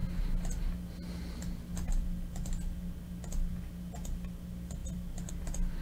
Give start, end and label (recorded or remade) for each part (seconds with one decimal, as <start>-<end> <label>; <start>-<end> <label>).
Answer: 0.0-5.8 recorded